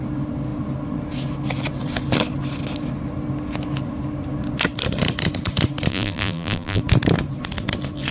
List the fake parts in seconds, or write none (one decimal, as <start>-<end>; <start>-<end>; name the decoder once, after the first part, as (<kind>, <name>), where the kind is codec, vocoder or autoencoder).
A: 5.9-6.8 (vocoder, BigVGAN v2)